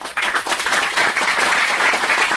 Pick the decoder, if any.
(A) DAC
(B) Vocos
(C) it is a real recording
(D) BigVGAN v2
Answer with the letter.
B